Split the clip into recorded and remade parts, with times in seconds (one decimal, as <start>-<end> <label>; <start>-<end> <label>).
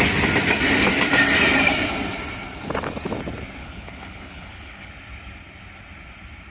0.0-3.6 recorded; 3.6-4.9 remade; 4.9-6.5 recorded